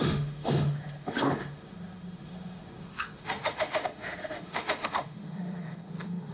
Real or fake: fake